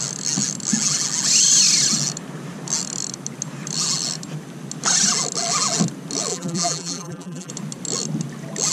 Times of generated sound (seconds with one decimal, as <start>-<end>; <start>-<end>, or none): 6.3-7.5